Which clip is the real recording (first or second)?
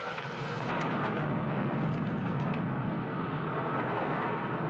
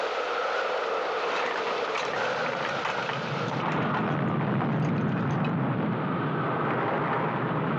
second